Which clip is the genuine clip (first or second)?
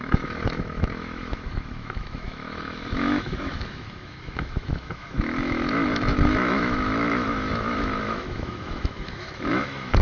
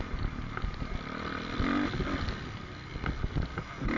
second